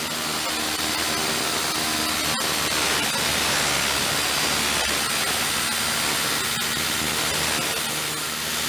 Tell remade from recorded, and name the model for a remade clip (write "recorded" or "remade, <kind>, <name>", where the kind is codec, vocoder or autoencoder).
recorded